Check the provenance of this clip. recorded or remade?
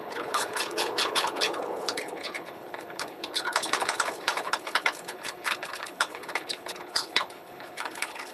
remade